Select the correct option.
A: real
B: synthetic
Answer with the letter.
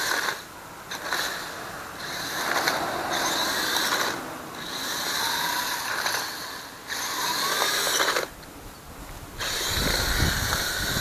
A